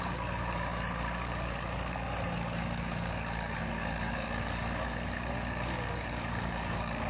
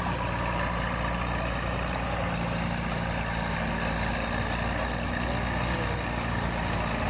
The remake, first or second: first